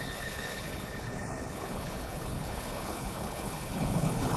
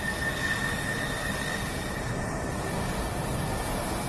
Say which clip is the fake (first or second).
first